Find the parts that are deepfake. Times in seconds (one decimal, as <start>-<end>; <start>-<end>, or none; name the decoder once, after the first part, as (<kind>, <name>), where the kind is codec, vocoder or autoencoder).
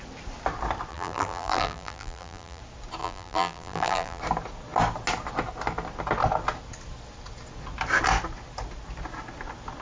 0.9-2.6 (vocoder, BigVGAN v2); 3.0-4.2